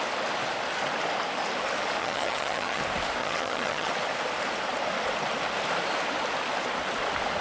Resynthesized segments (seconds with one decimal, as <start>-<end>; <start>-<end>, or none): 2.0-2.8; 3.2-3.9